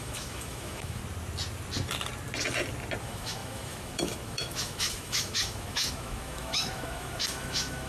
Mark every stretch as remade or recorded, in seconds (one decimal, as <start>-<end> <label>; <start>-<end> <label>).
0.0-1.0 remade; 1.0-3.0 recorded; 3.0-7.9 remade

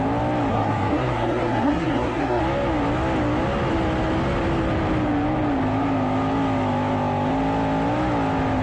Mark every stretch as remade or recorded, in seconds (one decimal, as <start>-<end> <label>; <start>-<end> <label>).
0.0-0.5 recorded; 0.5-2.4 remade; 2.4-8.6 recorded

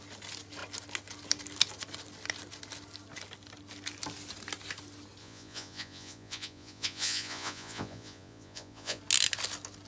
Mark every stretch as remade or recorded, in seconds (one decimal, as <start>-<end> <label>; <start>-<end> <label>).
0.0-5.2 recorded; 5.2-9.0 remade; 9.0-9.9 recorded

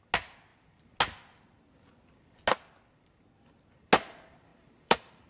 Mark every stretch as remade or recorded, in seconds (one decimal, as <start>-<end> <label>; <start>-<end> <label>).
0.0-4.5 recorded; 4.5-5.3 remade

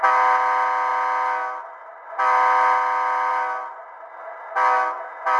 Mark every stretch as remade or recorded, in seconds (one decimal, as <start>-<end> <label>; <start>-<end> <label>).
0.0-5.4 recorded

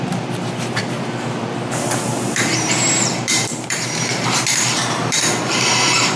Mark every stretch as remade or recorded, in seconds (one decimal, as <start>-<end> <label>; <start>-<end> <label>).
0.0-6.2 remade

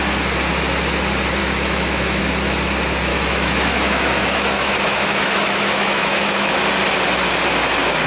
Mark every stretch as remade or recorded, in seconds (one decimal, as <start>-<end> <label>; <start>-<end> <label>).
0.0-1.4 recorded; 1.4-2.2 remade; 2.2-3.1 recorded; 3.1-6.6 remade; 6.6-8.1 recorded

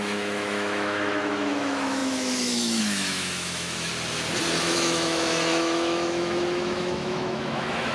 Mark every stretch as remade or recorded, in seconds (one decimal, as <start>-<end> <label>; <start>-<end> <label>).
0.0-3.9 remade; 3.9-4.6 recorded; 4.6-7.9 remade